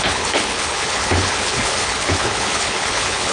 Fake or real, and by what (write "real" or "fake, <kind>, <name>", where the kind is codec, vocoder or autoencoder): fake, codec, HILCodec